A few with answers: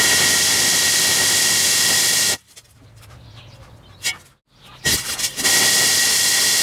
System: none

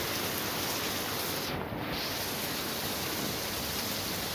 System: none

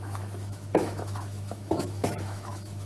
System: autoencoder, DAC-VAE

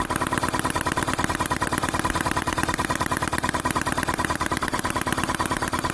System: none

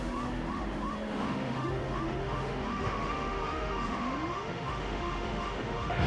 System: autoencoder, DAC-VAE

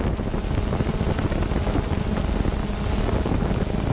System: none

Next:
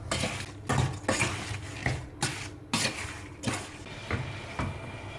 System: none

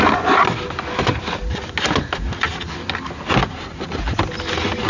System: none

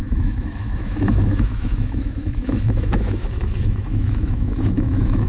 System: autoencoder, DAC-VAE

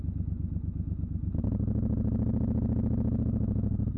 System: none